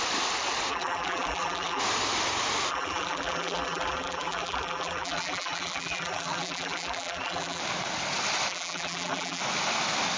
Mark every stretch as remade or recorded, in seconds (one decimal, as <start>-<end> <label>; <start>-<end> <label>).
0.0-0.7 recorded; 0.7-1.8 remade; 1.8-2.7 recorded; 2.7-7.6 remade; 7.6-8.5 recorded; 8.5-9.4 remade; 9.4-10.2 recorded